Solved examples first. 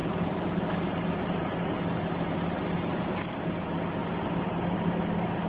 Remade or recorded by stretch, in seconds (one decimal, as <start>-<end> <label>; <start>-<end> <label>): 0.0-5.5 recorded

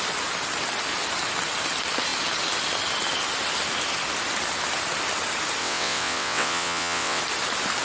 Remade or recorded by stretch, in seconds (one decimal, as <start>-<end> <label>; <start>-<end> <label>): 0.0-5.6 recorded; 5.6-7.2 remade; 7.2-7.8 recorded

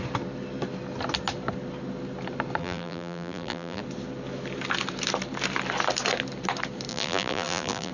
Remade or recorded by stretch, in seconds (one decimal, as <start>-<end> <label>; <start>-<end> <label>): 0.0-2.6 recorded; 2.6-3.8 remade; 3.8-6.9 recorded; 6.9-7.9 remade